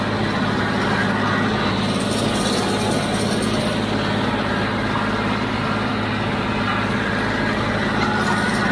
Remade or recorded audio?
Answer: recorded